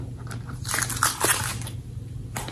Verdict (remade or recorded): remade